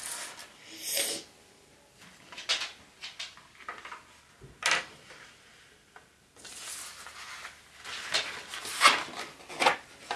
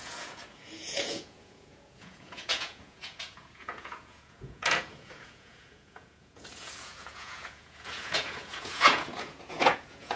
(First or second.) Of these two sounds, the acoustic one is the first